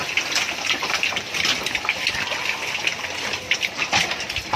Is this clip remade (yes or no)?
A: no